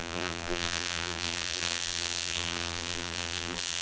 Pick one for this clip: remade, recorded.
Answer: remade